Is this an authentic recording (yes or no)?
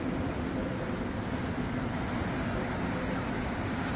yes